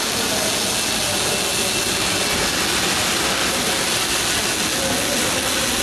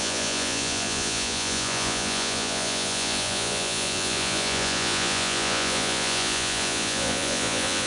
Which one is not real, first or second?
second